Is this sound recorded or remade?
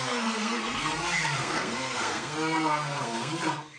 remade